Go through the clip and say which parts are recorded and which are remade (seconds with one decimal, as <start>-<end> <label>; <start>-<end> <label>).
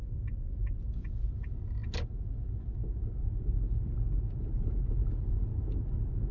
0.0-6.3 recorded